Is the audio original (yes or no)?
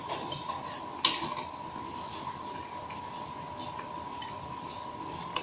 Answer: yes